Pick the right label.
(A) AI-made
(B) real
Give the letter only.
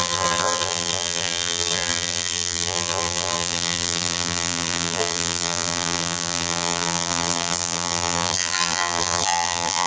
A